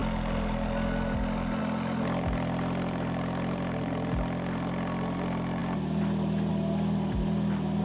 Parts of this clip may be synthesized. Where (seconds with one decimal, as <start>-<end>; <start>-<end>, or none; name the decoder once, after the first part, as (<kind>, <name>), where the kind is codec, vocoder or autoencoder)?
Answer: none